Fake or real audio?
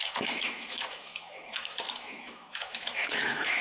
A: fake